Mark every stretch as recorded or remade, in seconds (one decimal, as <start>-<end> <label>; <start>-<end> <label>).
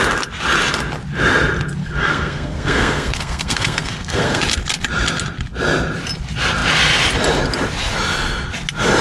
0.0-1.8 recorded; 1.8-4.4 remade; 4.4-9.0 recorded